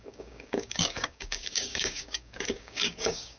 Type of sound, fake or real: fake